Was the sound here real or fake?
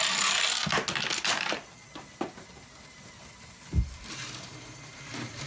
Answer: real